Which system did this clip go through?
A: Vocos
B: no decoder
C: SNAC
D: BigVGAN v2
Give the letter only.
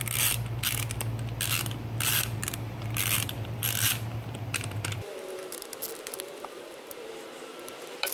D